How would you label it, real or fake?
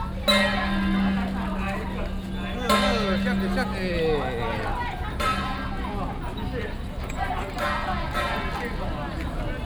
real